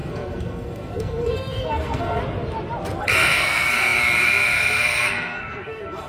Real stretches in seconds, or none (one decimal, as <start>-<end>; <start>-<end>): 2.2-3.0